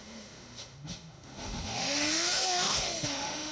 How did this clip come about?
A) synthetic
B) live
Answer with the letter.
A